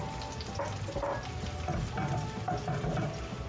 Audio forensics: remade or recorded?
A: recorded